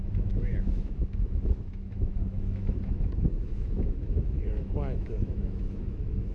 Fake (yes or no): yes